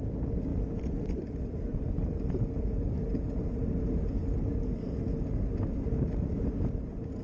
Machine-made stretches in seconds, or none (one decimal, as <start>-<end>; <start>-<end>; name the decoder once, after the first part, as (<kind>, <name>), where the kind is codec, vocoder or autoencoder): 0.5-2.7 (vocoder, BigVGAN v2)